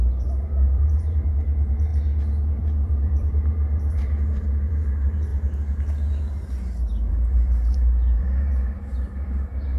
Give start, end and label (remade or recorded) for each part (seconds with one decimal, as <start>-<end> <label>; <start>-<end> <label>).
0.0-1.9 remade; 1.9-2.5 recorded; 2.5-5.3 remade; 5.3-7.1 recorded; 7.1-9.8 remade